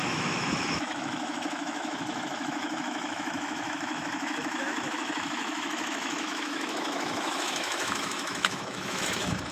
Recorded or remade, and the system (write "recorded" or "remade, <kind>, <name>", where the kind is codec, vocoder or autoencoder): remade, autoencoder, DAC-VAE